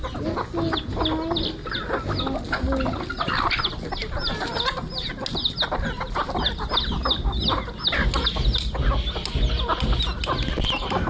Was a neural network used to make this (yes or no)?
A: no